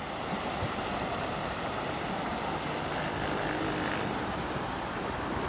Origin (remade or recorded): recorded